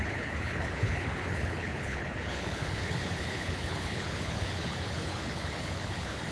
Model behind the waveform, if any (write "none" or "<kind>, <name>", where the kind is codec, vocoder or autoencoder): codec, HILCodec